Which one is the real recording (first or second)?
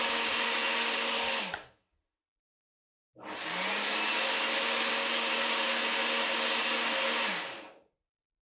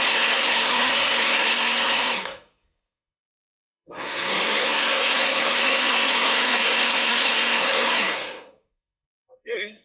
first